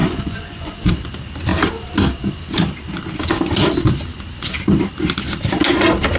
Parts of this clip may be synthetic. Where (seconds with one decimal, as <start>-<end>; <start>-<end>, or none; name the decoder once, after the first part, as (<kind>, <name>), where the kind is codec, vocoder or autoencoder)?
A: 0.0-0.9 (vocoder, Vocos)